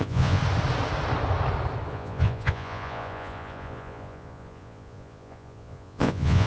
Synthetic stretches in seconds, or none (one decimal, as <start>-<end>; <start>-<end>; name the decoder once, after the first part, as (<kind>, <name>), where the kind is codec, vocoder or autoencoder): 0.0-0.4 (vocoder, Vocos); 1.9-6.5